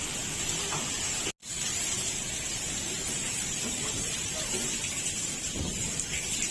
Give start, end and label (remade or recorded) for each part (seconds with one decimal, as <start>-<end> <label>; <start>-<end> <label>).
0.0-1.4 recorded; 1.4-2.0 remade; 2.0-3.0 recorded; 3.0-4.3 remade; 4.3-6.5 recorded